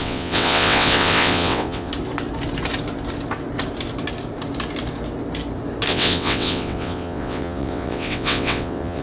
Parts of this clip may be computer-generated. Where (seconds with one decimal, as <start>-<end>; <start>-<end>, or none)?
0.0-1.9; 5.9-9.0